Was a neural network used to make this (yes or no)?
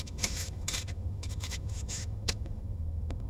yes